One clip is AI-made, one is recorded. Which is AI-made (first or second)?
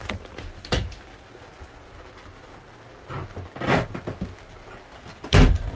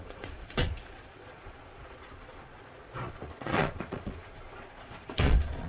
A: second